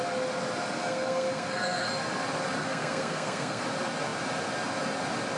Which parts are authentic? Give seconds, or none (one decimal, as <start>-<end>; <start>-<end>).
0.0-0.8; 1.9-2.6; 3.6-5.4